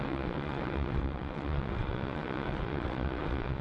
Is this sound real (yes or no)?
no